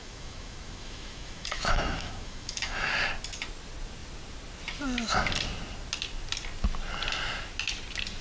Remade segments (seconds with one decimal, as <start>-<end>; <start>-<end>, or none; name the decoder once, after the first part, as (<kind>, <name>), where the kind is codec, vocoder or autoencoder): 0.0-2.9 (autoencoder, DAC-VAE)